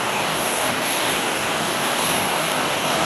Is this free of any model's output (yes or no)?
no